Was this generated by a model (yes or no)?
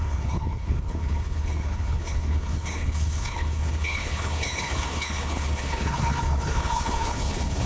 yes